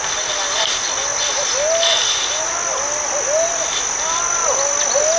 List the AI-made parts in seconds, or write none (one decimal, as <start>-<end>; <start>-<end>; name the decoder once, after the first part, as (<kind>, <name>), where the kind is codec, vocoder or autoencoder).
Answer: none

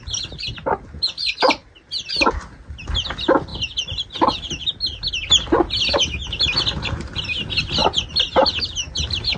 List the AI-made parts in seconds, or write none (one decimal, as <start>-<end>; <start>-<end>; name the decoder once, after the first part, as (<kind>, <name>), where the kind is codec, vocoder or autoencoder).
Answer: none

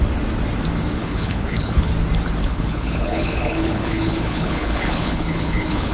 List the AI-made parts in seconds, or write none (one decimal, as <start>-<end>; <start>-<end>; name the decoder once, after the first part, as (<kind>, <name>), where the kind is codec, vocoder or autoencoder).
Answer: 1.0-1.9 (codec, HILCodec); 2.4-5.9

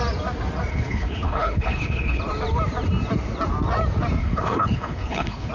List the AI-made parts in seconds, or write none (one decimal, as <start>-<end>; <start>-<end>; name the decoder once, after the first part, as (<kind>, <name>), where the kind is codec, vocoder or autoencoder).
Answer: 0.7-2.2 (codec, HILCodec); 4.2-5.5